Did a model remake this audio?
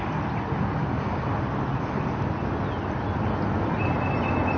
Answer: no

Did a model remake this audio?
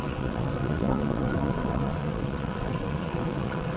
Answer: yes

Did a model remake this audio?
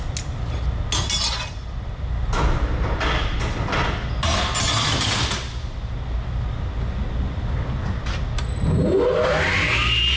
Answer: no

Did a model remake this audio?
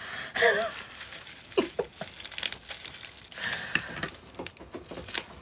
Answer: no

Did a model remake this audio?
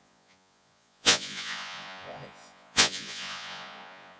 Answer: yes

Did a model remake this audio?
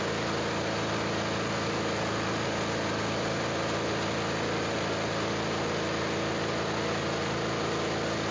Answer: no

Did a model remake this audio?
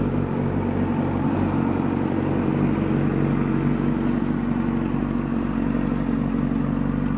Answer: no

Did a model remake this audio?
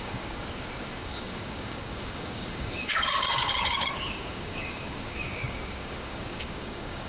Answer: yes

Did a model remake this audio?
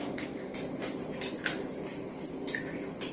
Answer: no